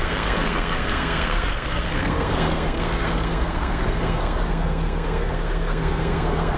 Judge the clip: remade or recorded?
remade